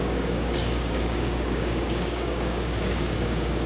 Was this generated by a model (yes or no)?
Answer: yes